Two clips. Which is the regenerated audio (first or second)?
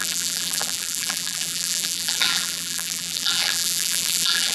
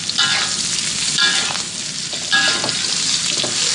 first